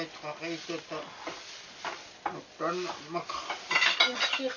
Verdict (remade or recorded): recorded